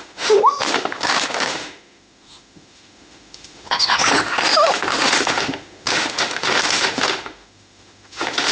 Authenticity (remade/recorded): remade